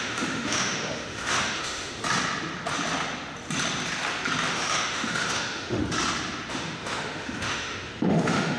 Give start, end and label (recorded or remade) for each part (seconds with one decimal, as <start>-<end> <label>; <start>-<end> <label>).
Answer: 0.0-2.0 remade; 2.0-4.5 recorded; 4.5-5.8 remade; 5.8-6.5 recorded; 6.5-8.6 remade